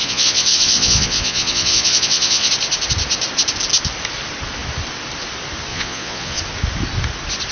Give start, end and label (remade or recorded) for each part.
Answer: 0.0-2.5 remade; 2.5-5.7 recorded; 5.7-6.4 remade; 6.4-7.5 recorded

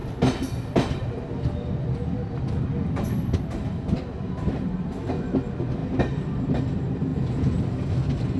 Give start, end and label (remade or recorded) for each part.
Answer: 0.0-7.1 recorded; 7.1-7.6 remade; 7.6-8.4 recorded